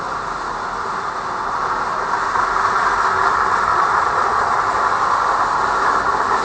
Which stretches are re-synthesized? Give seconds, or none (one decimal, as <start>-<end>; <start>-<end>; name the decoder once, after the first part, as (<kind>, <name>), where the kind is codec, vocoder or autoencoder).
3.7-4.6 (vocoder, Vocos)